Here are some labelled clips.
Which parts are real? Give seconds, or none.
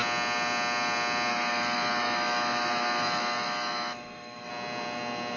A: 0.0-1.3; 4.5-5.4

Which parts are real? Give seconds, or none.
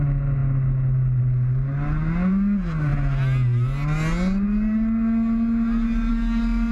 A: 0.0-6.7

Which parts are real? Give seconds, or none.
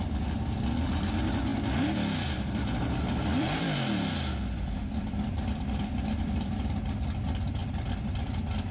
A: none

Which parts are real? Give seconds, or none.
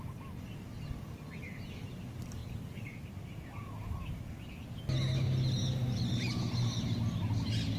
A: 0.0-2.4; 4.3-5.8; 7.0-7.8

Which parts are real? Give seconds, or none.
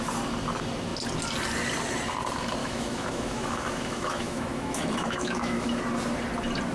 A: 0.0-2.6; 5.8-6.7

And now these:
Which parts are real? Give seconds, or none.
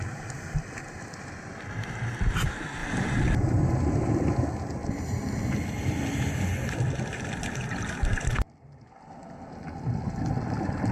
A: 0.0-10.9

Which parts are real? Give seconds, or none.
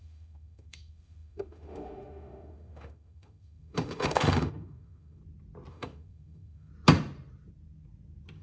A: 5.2-5.7; 6.7-8.4